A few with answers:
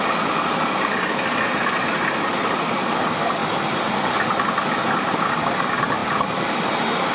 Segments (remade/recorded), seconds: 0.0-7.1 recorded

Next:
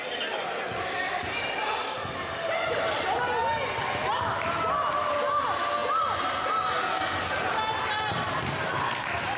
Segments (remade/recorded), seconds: 0.0-9.4 recorded

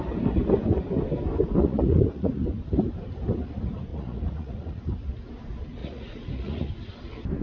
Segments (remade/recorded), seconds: 0.0-1.6 recorded; 1.6-2.3 remade; 2.3-3.9 recorded; 3.9-4.8 remade; 4.8-5.8 recorded; 5.8-6.7 remade; 6.7-7.4 recorded

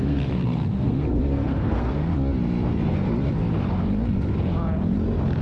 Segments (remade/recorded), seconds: 0.0-2.1 remade; 2.1-5.4 recorded

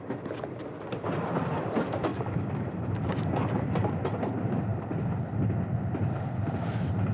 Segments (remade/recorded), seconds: 0.0-2.1 recorded; 2.1-3.3 remade; 3.3-7.1 recorded

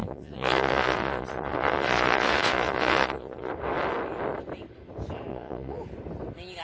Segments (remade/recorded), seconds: 0.0-3.5 remade; 3.5-5.3 recorded; 5.3-5.8 remade; 5.8-6.6 recorded

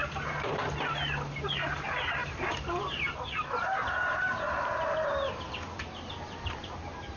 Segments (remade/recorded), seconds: 0.0-0.6 remade; 0.6-7.2 recorded

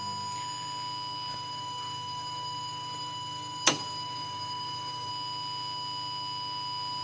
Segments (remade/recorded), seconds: 0.0-1.3 recorded; 1.3-5.1 remade; 5.1-7.0 recorded